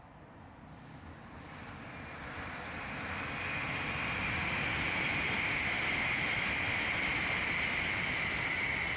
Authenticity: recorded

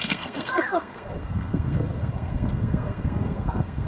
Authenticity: remade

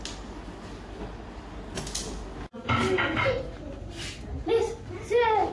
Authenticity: recorded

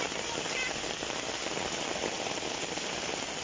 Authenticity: recorded